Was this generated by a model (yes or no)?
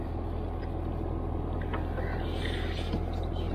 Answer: no